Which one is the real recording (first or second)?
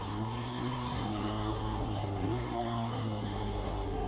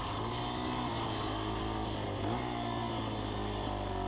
second